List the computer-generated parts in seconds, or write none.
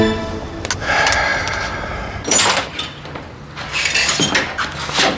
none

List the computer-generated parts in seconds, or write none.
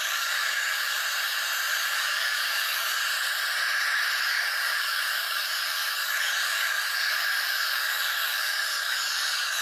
0.0-1.0; 1.7-3.0; 4.2-9.6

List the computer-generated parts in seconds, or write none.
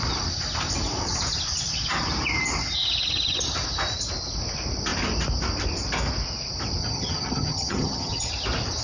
6.8-8.3